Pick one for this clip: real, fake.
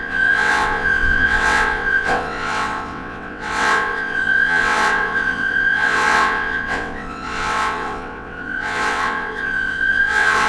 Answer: fake